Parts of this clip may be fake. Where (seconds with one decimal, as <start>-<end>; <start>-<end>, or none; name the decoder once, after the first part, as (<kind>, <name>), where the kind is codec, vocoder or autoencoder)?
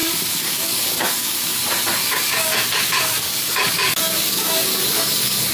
0.0-1.6 (codec, DAC); 2.0-5.5